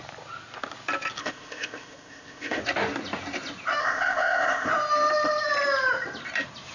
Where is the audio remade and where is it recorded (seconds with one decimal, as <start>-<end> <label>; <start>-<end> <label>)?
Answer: 0.0-1.2 recorded; 1.2-2.6 remade; 2.6-3.8 recorded; 3.8-4.7 remade; 4.7-6.7 recorded